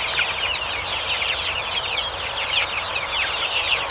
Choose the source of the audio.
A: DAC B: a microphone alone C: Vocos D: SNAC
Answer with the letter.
B